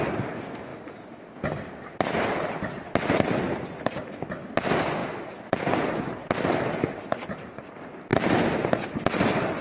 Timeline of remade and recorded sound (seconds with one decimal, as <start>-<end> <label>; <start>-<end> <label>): 0.0-9.6 recorded